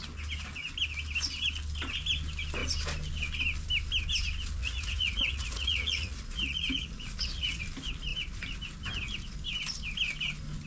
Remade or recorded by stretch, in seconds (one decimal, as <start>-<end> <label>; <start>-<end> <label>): 0.0-4.6 recorded; 4.6-7.6 remade; 7.6-10.7 recorded